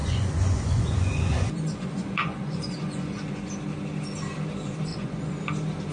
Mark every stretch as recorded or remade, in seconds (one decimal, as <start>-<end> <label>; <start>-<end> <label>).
0.0-3.5 remade; 3.5-4.9 recorded; 4.9-5.4 remade; 5.4-5.9 recorded